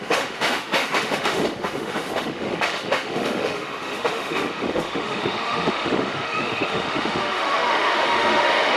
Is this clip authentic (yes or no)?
no